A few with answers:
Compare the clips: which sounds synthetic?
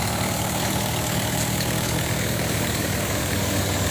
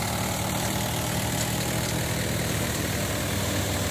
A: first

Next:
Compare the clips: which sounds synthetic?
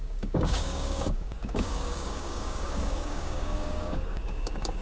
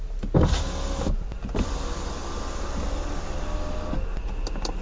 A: first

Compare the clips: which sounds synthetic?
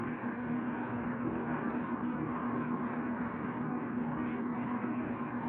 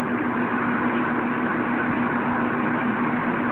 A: first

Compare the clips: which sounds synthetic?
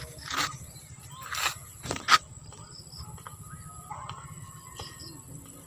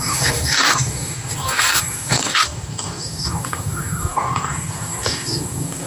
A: second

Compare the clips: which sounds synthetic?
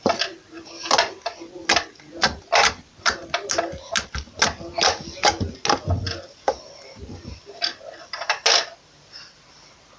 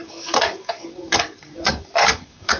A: second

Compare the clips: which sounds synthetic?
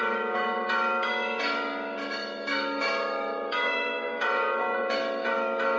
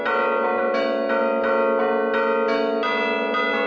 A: first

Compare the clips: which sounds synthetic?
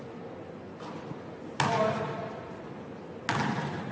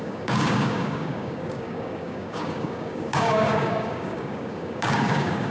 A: second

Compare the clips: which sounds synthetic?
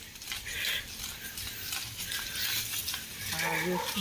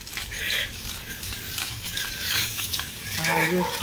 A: second